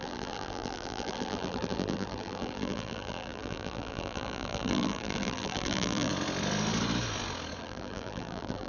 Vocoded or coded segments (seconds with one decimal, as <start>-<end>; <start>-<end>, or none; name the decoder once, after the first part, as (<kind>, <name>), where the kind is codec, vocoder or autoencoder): 0.0-6.1 (vocoder, BigVGAN v2); 7.6-8.7